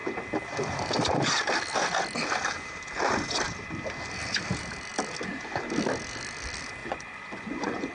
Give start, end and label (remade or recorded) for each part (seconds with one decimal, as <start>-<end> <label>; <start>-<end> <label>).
0.0-6.8 recorded; 6.8-7.9 remade